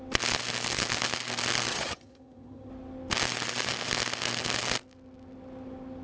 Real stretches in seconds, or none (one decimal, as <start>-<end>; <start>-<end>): 0.0-1.7; 2.7-6.0